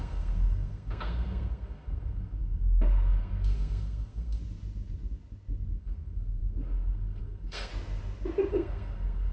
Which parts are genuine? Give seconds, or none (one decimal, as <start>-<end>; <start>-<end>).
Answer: 4.4-5.8; 7.7-8.5